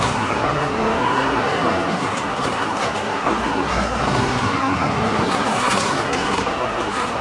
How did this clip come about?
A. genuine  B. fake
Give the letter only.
B